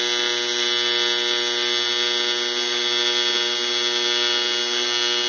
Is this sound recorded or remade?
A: recorded